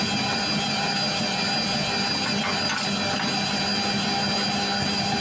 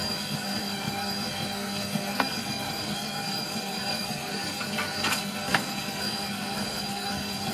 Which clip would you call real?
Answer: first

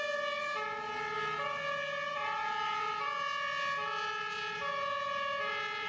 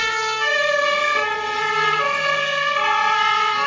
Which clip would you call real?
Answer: first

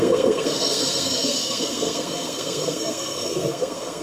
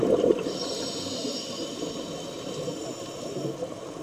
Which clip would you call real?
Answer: second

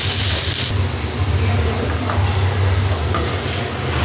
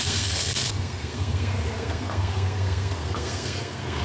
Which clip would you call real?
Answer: first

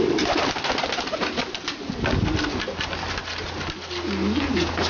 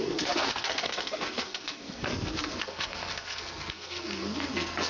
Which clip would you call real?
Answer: first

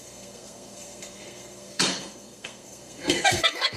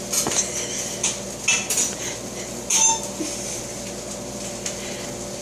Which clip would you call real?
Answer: second